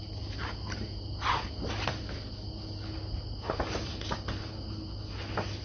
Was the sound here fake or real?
real